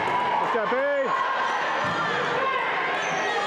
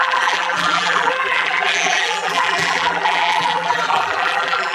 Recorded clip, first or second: first